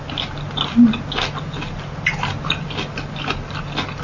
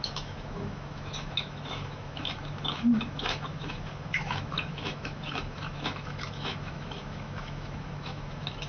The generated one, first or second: second